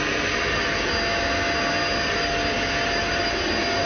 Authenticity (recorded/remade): recorded